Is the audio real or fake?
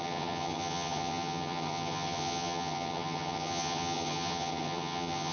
fake